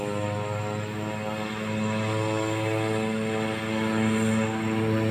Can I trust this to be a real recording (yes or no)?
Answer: yes